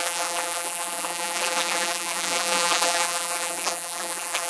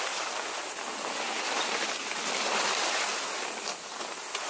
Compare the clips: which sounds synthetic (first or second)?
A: first